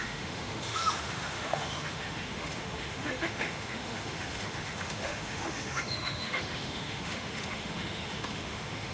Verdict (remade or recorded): remade